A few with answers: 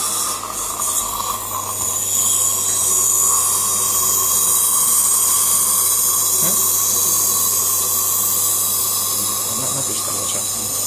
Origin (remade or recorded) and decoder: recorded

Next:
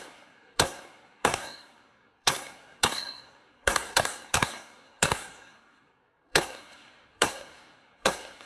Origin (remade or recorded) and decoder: remade, codec, SNAC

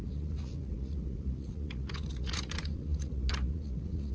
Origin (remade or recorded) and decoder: remade, vocoder, Vocos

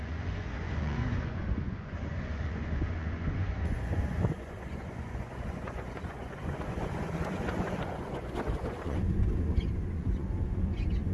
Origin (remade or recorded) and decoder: remade, vocoder, Vocos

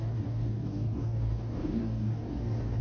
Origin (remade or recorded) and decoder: remade, codec, DAC